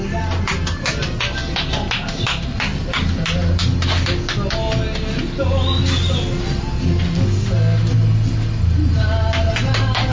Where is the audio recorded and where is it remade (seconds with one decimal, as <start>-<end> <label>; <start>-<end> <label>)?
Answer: 0.0-10.1 recorded